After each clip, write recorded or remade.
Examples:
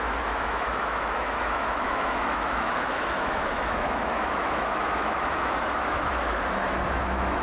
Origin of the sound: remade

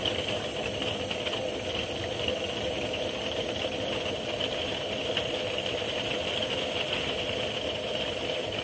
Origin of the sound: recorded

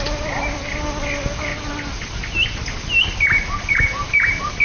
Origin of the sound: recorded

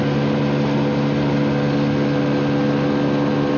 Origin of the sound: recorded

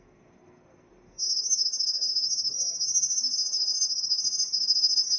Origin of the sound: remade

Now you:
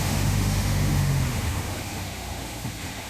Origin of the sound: remade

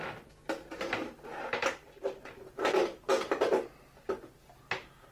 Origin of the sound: recorded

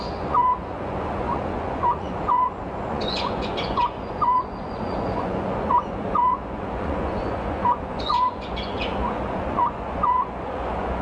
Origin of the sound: remade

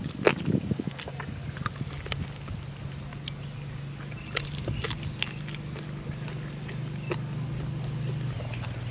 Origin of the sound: recorded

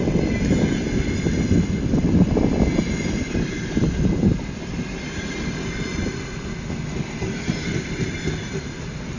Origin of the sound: recorded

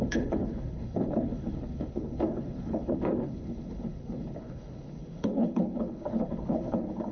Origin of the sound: remade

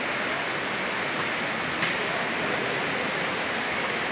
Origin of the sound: recorded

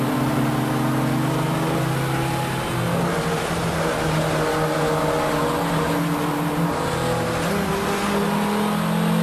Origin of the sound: recorded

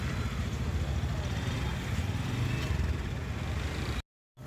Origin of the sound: recorded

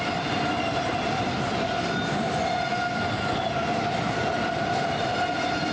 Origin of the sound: recorded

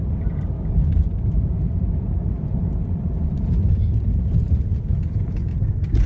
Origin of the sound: remade